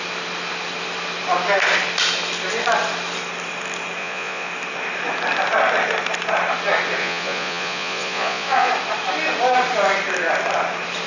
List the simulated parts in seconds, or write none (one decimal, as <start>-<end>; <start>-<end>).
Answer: 4.0-4.5; 7.0-8.7